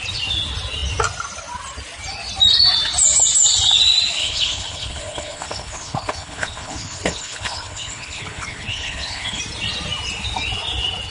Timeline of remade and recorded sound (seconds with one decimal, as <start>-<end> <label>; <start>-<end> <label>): 0.0-4.2 recorded; 4.2-9.4 remade; 9.4-11.1 recorded